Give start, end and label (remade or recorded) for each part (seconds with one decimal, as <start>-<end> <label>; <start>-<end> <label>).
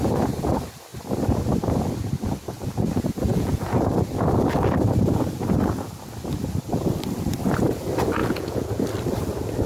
0.0-3.3 recorded; 3.3-3.9 remade; 3.9-8.2 recorded; 8.2-8.8 remade; 8.8-9.7 recorded